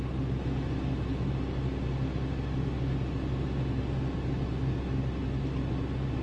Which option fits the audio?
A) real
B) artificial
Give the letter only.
A